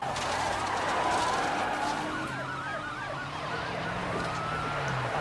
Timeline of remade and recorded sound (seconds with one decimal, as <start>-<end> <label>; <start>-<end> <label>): 0.0-2.7 recorded; 2.7-4.3 remade; 4.3-5.2 recorded